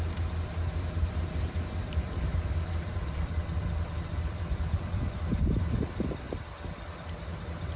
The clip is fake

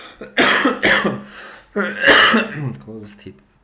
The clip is real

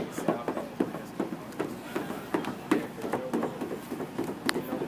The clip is real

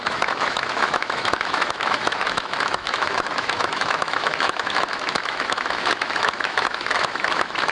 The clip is fake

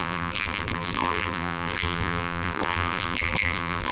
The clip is fake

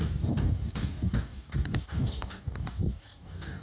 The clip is fake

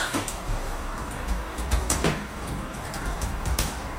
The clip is fake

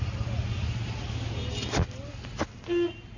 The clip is real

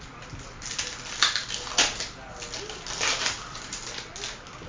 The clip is real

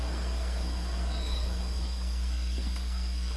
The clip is fake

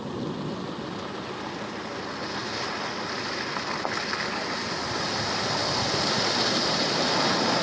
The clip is real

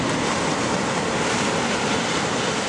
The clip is real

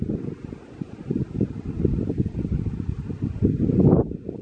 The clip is real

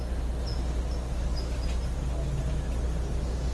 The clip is real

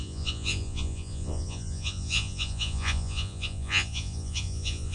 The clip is fake